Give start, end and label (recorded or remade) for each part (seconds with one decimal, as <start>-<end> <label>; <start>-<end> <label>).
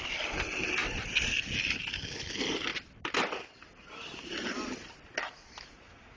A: 0.0-6.2 recorded